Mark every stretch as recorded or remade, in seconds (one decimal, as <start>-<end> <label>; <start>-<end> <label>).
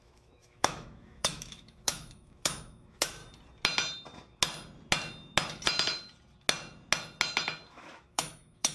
0.0-3.2 remade; 3.2-7.7 recorded; 7.7-8.7 remade